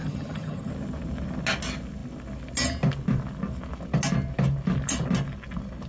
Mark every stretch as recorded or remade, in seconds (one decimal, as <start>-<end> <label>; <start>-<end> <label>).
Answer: 0.0-0.7 remade; 0.7-5.9 recorded